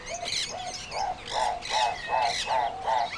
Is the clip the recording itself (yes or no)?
yes